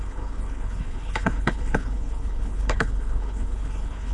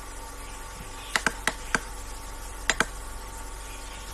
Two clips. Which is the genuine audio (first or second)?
second